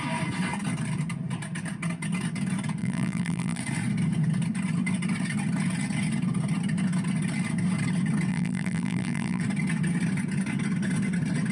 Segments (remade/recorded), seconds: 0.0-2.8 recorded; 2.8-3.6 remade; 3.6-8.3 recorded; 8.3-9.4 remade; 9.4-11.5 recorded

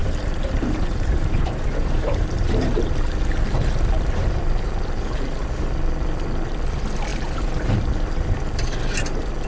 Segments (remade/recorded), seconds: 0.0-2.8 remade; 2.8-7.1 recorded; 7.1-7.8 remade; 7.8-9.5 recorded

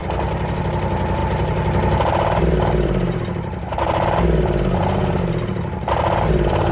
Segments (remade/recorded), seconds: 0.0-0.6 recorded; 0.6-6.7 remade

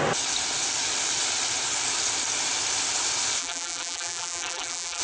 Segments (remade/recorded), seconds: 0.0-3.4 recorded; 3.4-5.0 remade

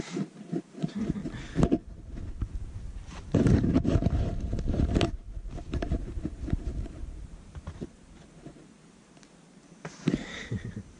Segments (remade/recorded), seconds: 0.0-1.2 remade; 1.2-1.9 recorded; 1.9-11.0 remade

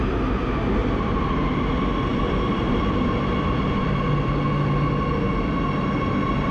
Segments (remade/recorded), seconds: 0.0-0.8 recorded; 0.8-1.3 remade; 1.3-2.1 recorded; 2.1-4.3 remade; 4.3-6.5 recorded

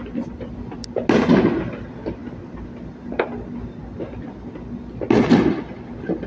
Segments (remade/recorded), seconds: 0.0-6.3 recorded

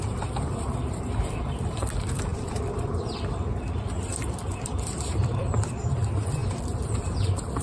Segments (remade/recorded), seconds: 0.0-7.6 remade